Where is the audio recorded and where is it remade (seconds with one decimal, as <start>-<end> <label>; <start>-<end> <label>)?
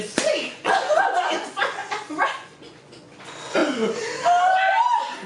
0.0-3.6 remade; 3.6-5.3 recorded